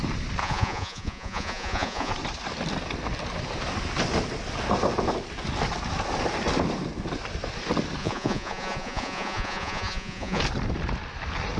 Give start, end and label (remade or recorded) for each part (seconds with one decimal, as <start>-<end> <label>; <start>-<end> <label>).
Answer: 0.0-0.4 recorded; 0.4-2.1 remade; 2.1-8.0 recorded; 8.0-10.4 remade; 10.4-11.6 recorded